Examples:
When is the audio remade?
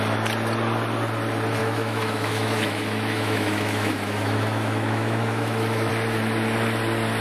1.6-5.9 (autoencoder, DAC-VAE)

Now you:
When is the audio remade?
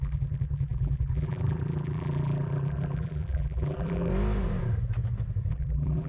0.0-4.1 (vocoder, BigVGAN v2); 5.5-6.1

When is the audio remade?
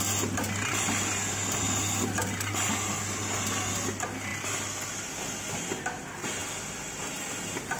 2.2-3.0 (vocoder, BigVGAN v2)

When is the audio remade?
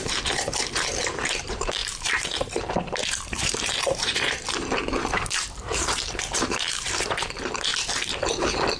0.0-7.7 (vocoder, BigVGAN v2)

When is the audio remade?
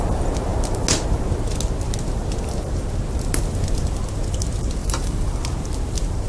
4.8-5.4 (vocoder, BigVGAN v2)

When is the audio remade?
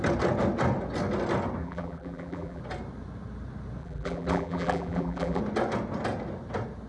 1.6-2.6 (vocoder, BigVGAN v2); 3.8-5.4